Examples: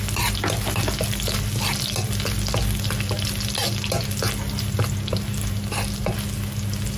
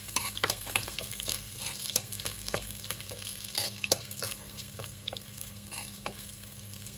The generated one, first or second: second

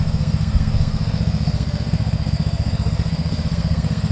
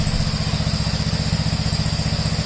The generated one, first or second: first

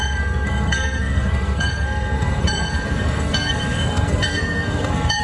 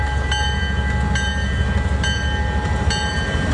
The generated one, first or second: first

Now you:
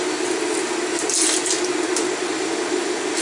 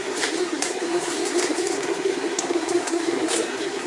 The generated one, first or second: second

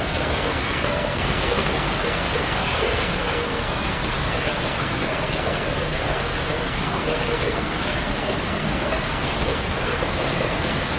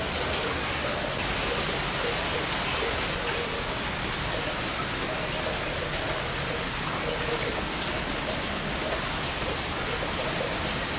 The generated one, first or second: first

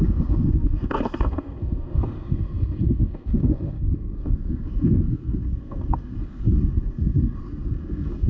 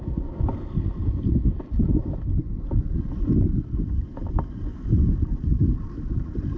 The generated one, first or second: first